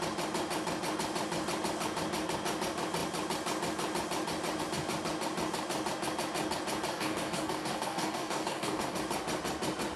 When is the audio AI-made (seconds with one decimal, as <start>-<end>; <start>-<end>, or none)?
6.9-9.0